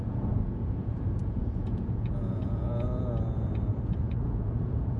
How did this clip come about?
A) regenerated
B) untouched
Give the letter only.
A